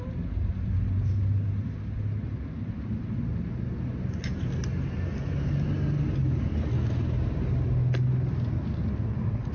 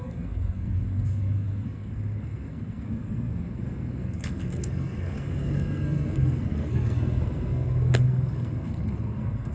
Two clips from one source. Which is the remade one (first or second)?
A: second